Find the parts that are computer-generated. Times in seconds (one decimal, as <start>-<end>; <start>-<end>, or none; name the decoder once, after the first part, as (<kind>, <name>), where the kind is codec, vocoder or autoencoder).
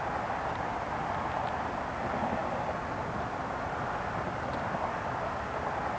none